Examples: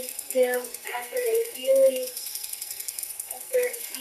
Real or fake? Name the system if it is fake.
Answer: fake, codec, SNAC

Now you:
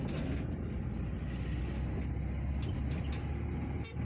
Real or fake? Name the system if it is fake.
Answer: real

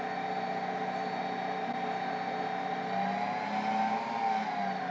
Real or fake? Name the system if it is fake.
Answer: real